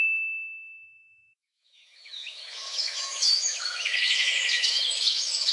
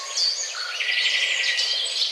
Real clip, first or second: second